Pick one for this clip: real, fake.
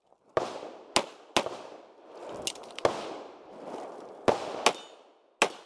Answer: real